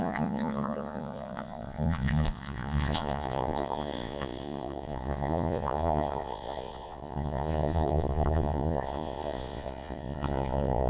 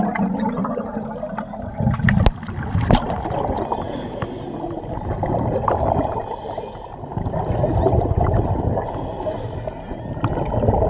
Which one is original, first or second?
second